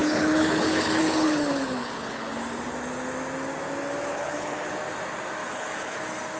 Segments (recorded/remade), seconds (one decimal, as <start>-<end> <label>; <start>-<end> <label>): 0.0-2.3 remade; 2.3-4.1 recorded; 4.1-4.7 remade; 4.7-5.4 recorded; 5.4-6.0 remade; 6.0-6.4 recorded